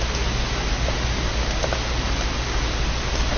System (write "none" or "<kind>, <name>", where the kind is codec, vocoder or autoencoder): none